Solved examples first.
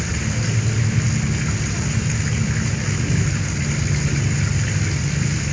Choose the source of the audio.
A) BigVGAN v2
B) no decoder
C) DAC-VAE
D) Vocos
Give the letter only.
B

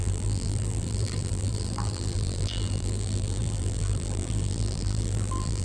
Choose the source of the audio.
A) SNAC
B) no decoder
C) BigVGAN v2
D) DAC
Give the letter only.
C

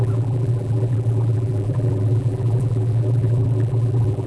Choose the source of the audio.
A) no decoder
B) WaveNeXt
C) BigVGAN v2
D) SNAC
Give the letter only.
C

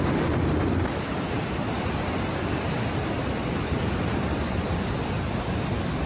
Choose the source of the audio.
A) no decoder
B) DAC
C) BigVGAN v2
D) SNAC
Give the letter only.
C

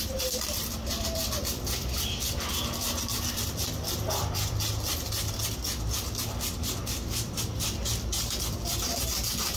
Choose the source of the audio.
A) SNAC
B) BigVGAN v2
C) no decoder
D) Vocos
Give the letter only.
B